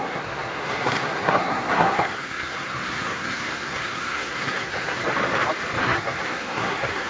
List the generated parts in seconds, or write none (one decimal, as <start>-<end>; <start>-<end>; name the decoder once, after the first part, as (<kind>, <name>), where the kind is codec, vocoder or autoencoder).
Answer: 0.0-5.0 (codec, SNAC); 5.8-7.1